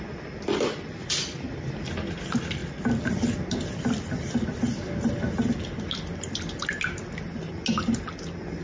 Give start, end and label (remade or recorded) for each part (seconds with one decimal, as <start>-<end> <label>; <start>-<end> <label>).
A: 0.0-8.6 recorded